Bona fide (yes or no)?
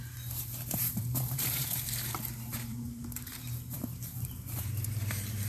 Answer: no